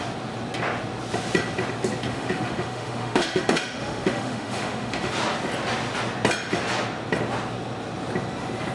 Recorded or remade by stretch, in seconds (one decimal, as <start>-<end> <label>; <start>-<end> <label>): 0.0-2.1 recorded; 2.1-5.1 remade; 5.1-8.7 recorded